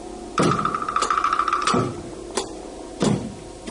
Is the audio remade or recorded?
remade